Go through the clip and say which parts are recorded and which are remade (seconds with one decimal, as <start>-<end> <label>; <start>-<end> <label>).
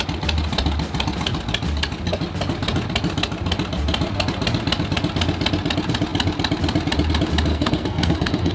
0.0-7.5 recorded; 7.5-8.5 remade